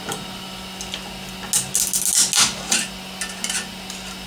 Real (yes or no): yes